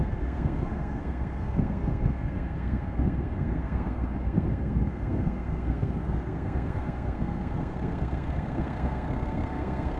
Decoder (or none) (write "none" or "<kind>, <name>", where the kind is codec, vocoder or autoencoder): codec, SNAC